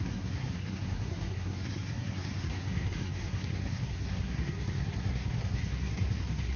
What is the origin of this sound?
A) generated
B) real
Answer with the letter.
A